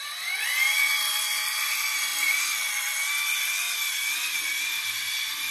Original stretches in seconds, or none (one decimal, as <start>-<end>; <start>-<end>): 0.0-5.5